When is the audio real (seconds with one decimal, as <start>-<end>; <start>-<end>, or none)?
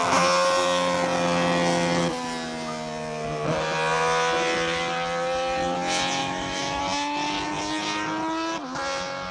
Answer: 0.0-6.2; 6.8-9.3